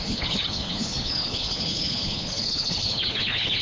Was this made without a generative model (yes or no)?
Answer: no